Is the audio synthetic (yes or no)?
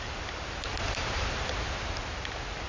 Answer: no